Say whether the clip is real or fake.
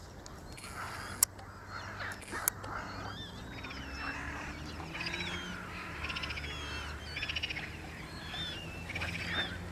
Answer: real